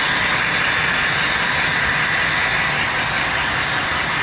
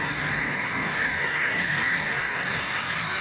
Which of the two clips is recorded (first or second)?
first